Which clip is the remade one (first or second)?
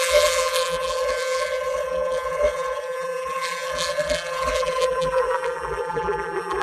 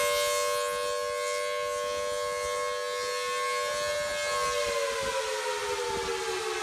first